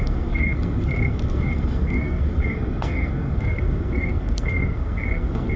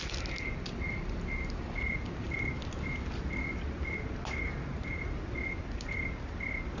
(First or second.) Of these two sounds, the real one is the second